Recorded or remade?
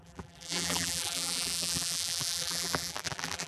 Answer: remade